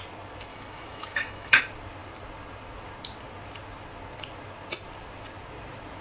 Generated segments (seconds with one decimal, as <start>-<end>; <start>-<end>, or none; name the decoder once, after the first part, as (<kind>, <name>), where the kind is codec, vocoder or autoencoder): 0.5-1.6 (autoencoder, DAC-VAE)